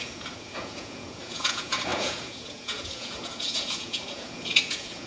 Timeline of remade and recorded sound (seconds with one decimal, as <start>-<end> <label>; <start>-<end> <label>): 0.0-5.1 remade